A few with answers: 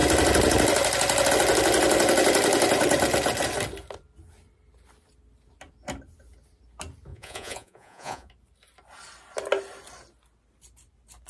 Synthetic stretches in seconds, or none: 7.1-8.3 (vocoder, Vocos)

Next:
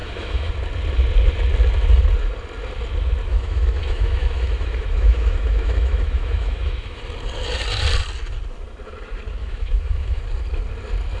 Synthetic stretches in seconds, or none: 0.0-0.5 (autoencoder, DAC-VAE); 3.3-7.0; 9.4-10.2

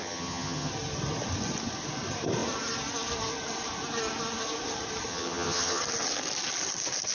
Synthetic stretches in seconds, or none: 0.0-0.7 (vocoder, HiFi-GAN); 5.1-5.8

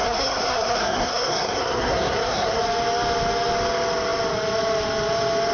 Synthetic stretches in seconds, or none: 0.0-2.6 (codec, SNAC)

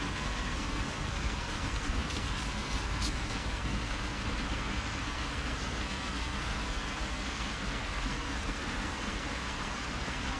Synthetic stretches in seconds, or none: 0.0-10.4 (codec, SNAC)